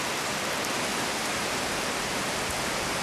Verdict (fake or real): real